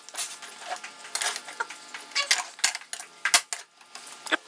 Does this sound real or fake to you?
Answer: real